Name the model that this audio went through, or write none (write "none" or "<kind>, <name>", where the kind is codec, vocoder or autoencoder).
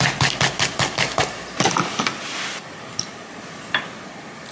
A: none